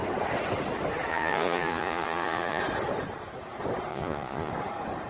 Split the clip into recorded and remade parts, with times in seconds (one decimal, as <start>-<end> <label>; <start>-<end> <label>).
0.0-1.1 recorded; 1.1-2.6 remade; 2.6-3.9 recorded; 3.9-4.5 remade; 4.5-5.1 recorded